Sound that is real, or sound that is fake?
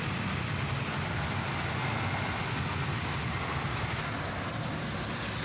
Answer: real